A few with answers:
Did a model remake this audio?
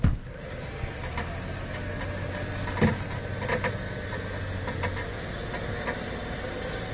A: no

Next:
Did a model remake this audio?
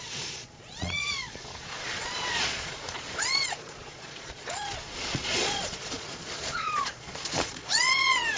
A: yes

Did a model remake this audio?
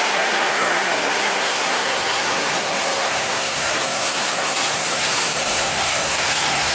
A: yes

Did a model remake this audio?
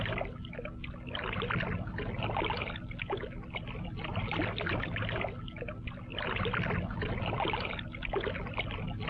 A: no